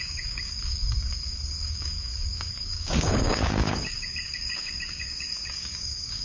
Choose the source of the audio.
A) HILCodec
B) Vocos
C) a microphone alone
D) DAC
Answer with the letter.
D